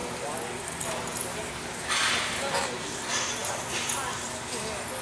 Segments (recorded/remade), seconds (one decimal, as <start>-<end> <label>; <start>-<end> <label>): 0.0-5.0 recorded